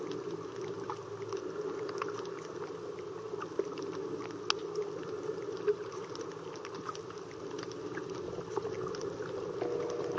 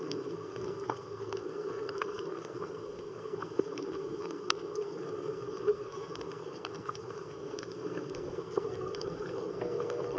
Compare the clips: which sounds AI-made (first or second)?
second